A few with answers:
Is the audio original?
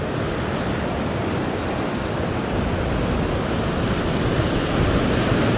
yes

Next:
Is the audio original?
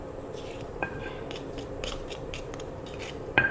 no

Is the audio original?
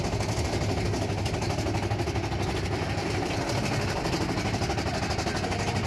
yes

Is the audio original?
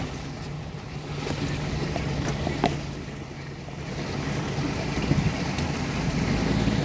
yes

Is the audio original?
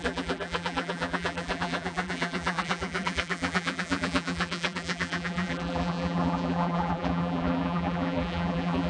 no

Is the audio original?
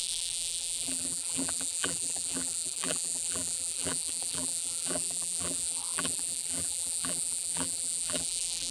no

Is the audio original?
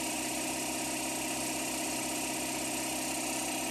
yes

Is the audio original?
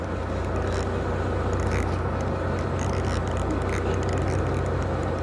yes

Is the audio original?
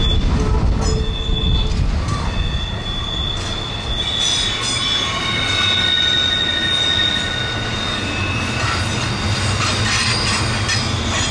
yes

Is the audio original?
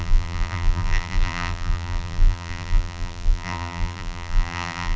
no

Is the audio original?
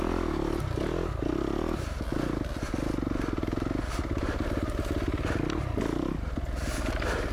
yes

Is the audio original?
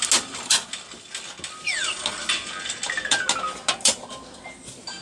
yes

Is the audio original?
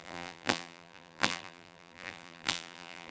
no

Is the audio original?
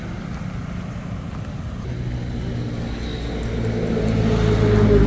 yes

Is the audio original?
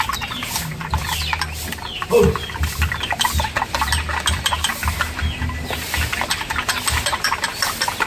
no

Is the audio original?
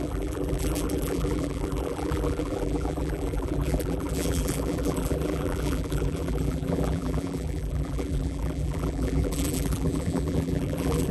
no